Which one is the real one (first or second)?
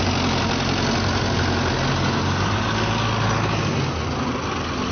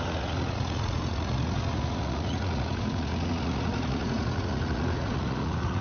first